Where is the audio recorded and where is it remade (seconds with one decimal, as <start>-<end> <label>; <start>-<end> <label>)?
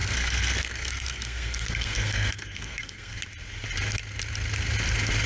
0.0-3.2 remade; 3.2-5.3 recorded